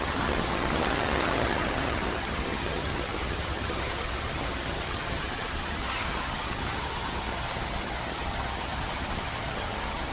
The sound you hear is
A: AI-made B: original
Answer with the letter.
A